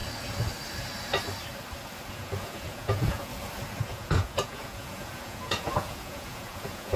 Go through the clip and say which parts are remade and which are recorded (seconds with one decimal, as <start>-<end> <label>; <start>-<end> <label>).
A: 0.0-2.1 recorded; 2.1-3.3 remade; 3.3-3.8 recorded; 3.8-7.0 remade